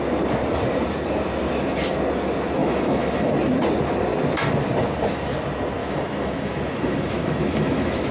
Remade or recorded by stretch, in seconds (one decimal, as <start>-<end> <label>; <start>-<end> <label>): 0.0-2.6 recorded; 2.6-3.3 remade; 3.3-5.8 recorded; 5.8-8.1 remade